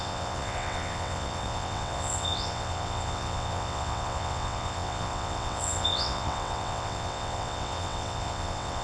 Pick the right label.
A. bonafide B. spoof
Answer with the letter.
B